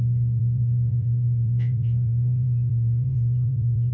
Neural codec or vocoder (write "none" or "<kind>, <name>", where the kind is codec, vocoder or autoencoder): vocoder, Vocos